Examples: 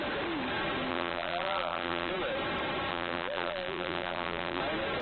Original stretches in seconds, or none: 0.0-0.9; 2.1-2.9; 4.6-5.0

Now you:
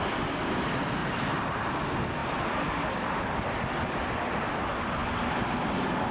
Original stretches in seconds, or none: 0.0-1.0; 1.7-6.1

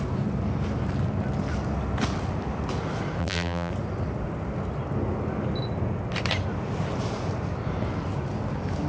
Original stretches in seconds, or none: 0.0-3.2; 3.7-8.9

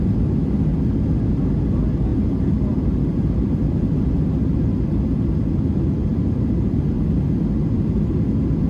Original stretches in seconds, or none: 0.0-2.1; 3.5-6.1; 6.8-8.7

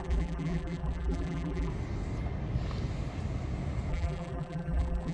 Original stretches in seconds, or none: 1.7-3.9